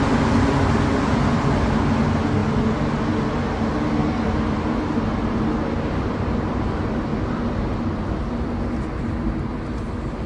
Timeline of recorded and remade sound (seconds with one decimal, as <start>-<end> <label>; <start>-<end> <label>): 0.0-10.3 recorded